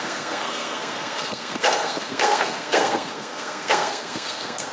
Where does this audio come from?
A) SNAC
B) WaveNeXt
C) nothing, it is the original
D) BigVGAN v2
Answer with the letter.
A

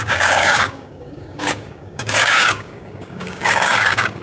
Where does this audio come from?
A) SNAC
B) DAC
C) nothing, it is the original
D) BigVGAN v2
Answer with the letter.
B